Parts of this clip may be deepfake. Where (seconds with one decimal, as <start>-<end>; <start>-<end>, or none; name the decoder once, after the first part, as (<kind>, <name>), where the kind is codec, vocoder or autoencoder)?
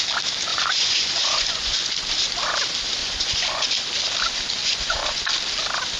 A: 0.5-1.9 (vocoder, Vocos); 3.0-3.7; 4.6-5.2